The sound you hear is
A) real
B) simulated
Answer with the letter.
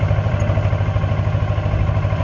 A